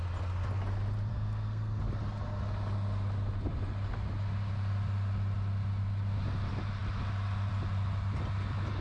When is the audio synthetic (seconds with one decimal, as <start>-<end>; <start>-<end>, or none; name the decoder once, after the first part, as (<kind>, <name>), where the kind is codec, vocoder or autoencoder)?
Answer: 1.1-1.8 (codec, SNAC)